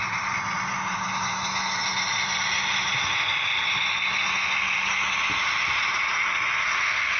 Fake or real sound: real